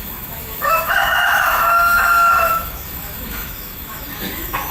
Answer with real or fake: fake